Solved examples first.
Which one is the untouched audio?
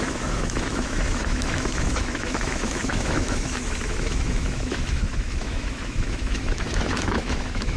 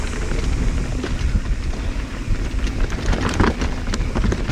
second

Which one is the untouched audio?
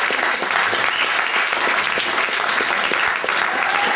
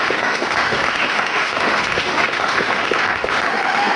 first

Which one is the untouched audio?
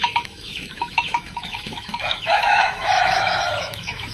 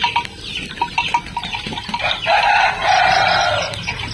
second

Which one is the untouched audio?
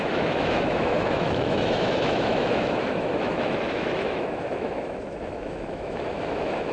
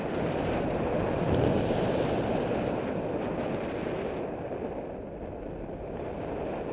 second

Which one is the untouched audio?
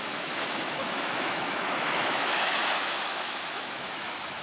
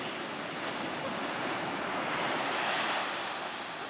second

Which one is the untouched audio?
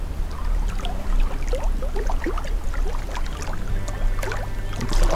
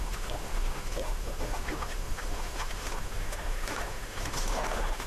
first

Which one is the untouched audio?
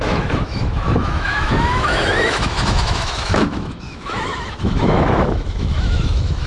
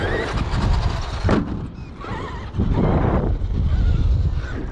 second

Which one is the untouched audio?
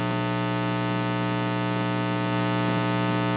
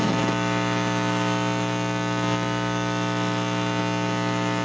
first